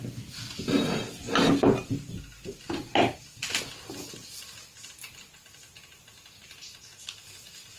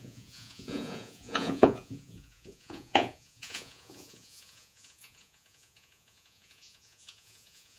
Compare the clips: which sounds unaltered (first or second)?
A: first